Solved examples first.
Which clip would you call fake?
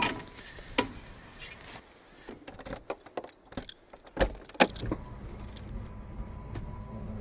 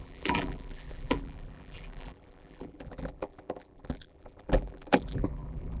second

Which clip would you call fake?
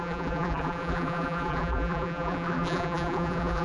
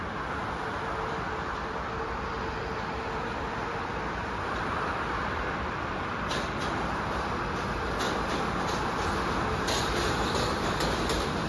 first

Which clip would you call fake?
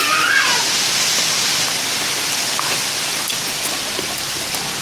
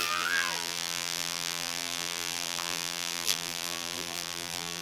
second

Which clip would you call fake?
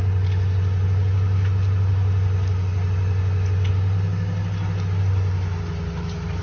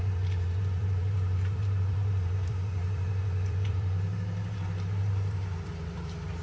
second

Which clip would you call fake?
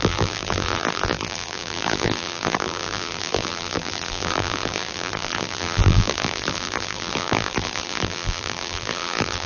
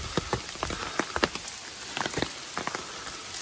first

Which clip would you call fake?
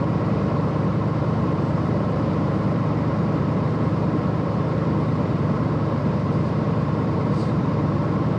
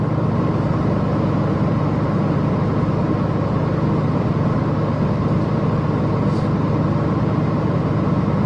first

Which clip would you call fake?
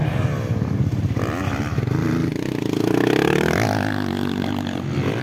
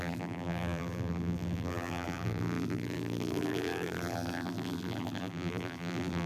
second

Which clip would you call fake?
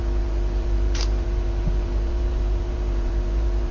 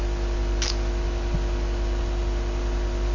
first